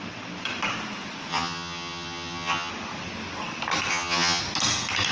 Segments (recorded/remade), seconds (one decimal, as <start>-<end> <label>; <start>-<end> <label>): 0.0-1.3 recorded; 1.3-2.7 remade; 2.7-3.9 recorded; 3.9-4.4 remade; 4.4-5.1 recorded